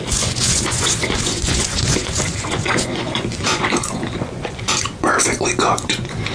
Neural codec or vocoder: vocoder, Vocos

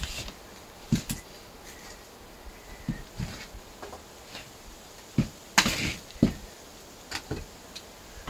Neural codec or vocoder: none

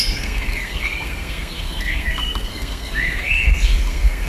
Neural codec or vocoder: codec, SNAC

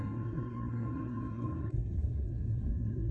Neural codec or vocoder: codec, SNAC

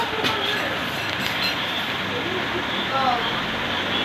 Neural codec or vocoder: none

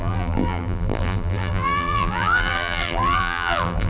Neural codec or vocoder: vocoder, BigVGAN v2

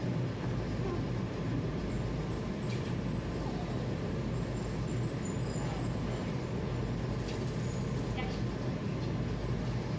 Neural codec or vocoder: none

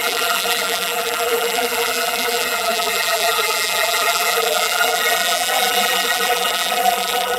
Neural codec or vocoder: vocoder, BigVGAN v2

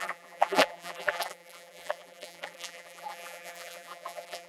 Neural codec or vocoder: vocoder, BigVGAN v2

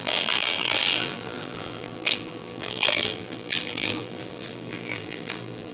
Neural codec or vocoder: vocoder, BigVGAN v2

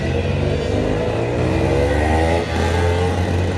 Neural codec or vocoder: none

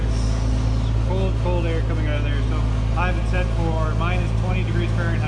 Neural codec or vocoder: none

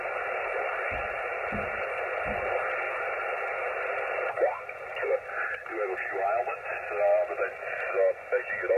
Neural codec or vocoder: none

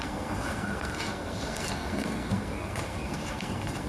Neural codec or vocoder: codec, SNAC